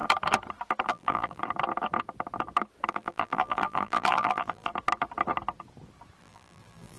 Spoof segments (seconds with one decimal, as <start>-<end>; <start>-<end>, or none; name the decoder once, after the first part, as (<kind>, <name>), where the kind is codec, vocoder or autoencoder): 0.9-1.4 (vocoder, BigVGAN v2); 2.9-4.7; 6.2-7.0